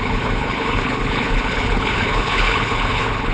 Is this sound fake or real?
fake